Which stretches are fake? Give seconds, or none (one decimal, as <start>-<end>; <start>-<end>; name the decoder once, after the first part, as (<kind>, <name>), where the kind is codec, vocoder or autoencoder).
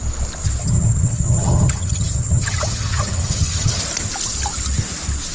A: 0.6-3.8 (vocoder, HiFi-GAN)